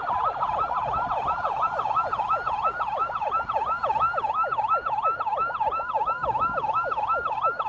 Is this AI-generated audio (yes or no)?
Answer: no